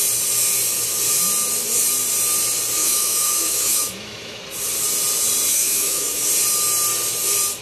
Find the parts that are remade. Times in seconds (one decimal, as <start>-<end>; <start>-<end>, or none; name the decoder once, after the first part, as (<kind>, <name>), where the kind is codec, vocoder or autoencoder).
2.8-4.4 (autoencoder, DAC-VAE); 5.5-6.2